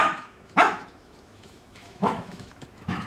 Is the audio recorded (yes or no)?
no